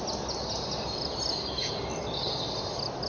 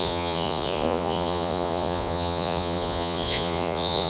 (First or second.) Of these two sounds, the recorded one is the first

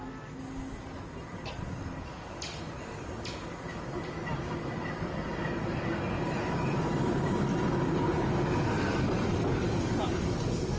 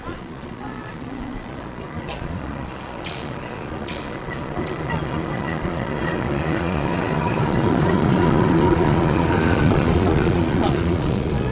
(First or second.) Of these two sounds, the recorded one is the first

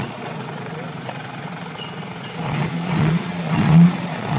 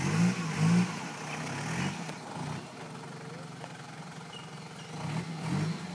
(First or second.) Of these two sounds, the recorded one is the second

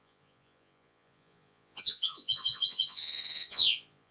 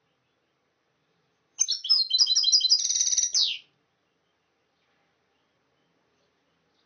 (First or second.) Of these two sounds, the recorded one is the second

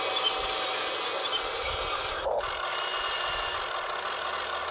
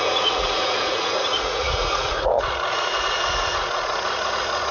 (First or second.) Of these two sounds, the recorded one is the first